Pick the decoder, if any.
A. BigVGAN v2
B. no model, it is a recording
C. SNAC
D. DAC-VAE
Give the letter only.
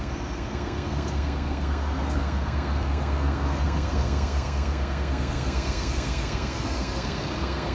C